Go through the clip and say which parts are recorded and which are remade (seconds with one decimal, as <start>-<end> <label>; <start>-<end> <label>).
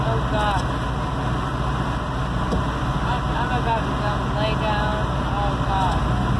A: 0.0-6.4 recorded